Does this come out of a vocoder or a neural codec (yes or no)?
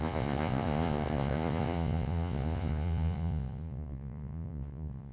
yes